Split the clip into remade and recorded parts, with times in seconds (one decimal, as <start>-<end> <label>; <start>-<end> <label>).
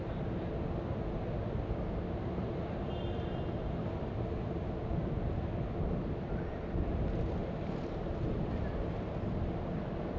0.0-10.2 recorded